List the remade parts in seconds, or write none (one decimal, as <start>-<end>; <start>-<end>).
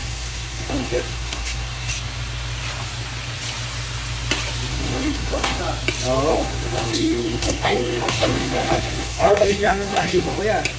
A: 0.0-1.9; 4.7-5.6; 6.3-10.4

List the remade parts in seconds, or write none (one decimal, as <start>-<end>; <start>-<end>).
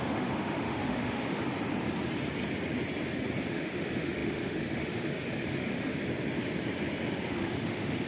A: 0.0-1.4; 3.5-5.9; 7.3-8.1